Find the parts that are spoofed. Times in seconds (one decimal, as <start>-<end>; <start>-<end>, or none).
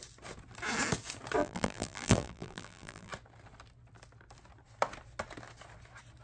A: 1.4-3.1